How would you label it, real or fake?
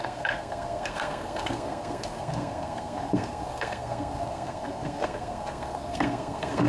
fake